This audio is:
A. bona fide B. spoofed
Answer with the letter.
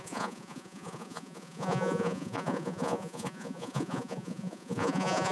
B